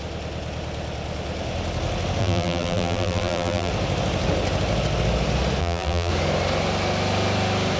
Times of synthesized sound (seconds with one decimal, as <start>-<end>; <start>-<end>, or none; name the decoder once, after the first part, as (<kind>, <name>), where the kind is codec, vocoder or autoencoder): 2.2-3.7 (vocoder, BigVGAN v2); 5.6-6.1